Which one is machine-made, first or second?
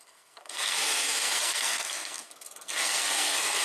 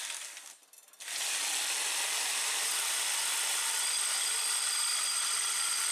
first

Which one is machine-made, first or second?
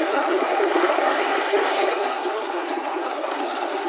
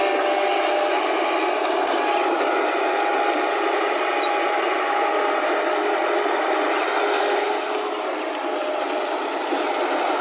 first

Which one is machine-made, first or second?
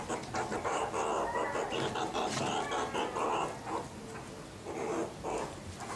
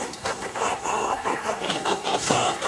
second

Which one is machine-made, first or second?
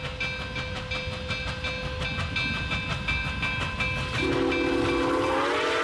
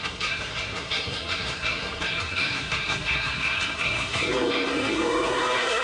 second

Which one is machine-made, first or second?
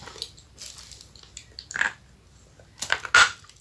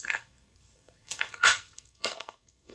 second